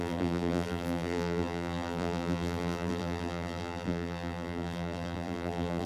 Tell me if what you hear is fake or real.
fake